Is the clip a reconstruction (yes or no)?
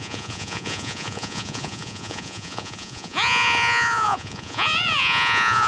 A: yes